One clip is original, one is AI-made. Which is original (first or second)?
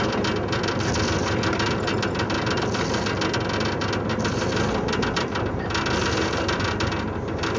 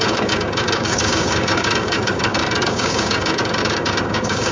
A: first